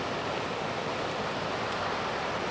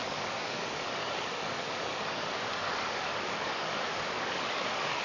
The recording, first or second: first